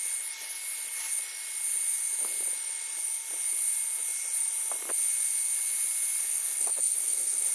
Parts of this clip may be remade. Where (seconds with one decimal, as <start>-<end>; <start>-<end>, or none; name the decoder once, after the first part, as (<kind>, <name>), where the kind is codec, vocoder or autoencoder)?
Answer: 6.2-7.5 (codec, SNAC)